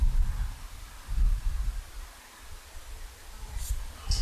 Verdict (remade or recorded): recorded